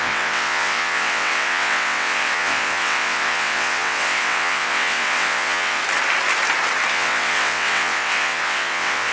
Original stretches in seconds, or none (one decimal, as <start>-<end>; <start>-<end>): 5.8-6.9